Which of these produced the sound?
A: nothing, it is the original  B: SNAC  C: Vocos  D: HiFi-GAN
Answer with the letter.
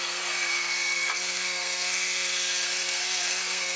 B